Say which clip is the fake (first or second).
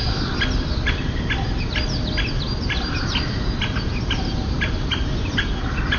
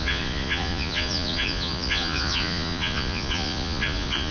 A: second